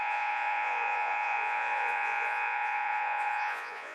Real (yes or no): no